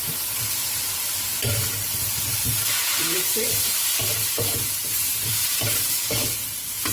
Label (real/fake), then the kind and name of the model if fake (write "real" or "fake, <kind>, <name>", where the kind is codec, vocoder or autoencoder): fake, vocoder, BigVGAN v2